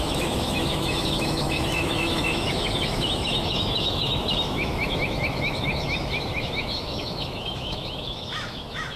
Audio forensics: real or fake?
fake